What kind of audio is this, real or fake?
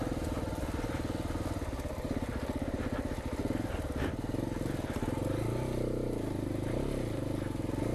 real